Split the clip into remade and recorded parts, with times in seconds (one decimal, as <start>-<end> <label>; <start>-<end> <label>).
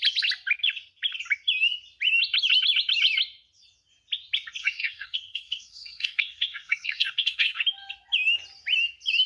0.0-4.6 recorded; 4.6-7.6 remade; 7.6-9.3 recorded